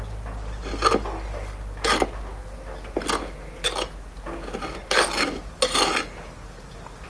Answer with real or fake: real